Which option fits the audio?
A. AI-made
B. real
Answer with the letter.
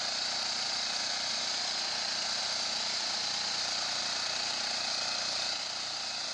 B